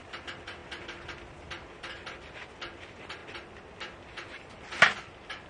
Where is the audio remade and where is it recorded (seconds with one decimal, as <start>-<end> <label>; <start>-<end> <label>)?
0.0-5.5 recorded